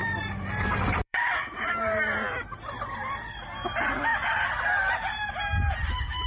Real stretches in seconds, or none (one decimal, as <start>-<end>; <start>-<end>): 1.8-4.1; 5.3-6.3